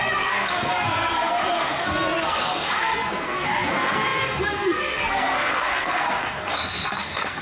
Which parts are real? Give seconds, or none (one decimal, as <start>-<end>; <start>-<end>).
none